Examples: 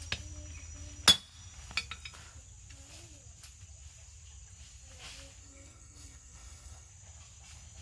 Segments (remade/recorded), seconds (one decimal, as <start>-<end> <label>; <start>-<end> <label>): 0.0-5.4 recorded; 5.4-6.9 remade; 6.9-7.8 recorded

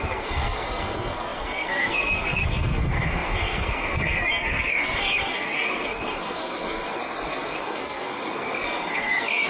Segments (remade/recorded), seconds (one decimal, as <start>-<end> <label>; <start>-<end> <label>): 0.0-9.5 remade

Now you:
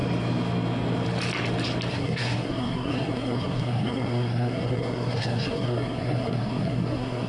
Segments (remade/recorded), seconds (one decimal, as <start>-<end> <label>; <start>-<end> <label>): 0.0-1.9 recorded; 1.9-7.3 remade

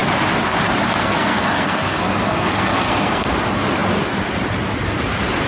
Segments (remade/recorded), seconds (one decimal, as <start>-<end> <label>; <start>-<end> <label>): 0.0-1.0 recorded; 1.0-3.3 remade; 3.3-5.5 recorded

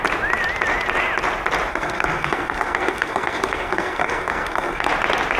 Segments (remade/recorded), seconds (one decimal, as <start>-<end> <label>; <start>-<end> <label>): 0.0-1.7 recorded; 1.7-4.9 remade; 4.9-5.4 recorded

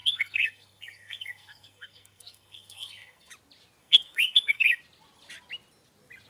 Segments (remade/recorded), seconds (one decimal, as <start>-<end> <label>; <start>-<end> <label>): 0.0-3.3 remade; 3.3-3.8 recorded; 3.8-4.8 remade; 4.8-6.3 recorded

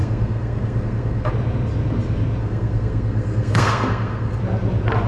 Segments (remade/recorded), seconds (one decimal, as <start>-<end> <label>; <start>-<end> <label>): 0.0-1.3 remade; 1.3-2.4 recorded; 2.4-4.4 remade; 4.4-5.1 recorded

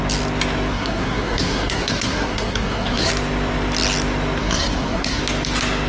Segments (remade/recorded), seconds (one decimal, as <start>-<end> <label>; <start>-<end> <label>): 0.0-0.7 recorded; 0.7-3.1 remade; 3.1-4.4 recorded; 4.4-5.2 remade; 5.2-5.9 recorded